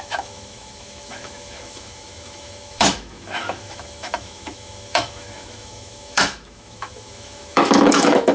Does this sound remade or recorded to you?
remade